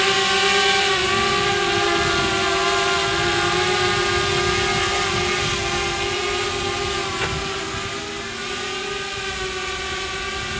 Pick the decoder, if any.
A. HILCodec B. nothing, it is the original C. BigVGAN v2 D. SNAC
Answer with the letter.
B